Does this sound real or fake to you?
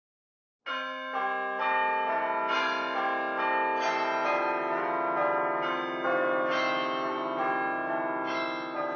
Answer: real